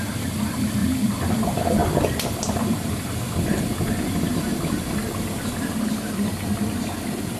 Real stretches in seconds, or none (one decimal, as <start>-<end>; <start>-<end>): none